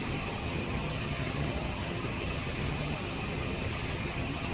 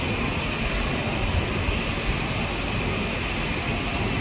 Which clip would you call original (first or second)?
second